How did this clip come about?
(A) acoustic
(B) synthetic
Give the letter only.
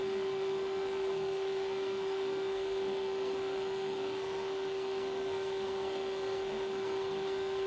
B